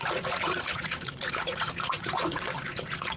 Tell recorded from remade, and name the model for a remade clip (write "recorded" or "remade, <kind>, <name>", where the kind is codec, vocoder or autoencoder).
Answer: remade, vocoder, Vocos